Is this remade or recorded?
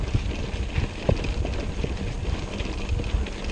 recorded